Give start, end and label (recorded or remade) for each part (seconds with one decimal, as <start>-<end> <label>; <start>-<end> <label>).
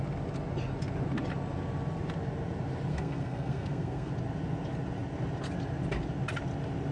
0.0-2.9 recorded; 2.9-4.1 remade; 4.1-6.9 recorded